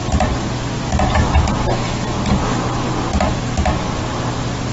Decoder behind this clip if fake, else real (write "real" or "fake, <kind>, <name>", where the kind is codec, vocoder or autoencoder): real